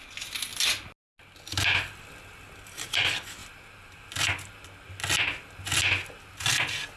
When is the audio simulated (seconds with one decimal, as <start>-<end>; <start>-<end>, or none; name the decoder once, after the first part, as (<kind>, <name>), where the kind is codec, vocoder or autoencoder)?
none